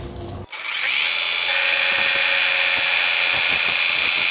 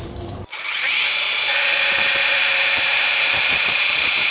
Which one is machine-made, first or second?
second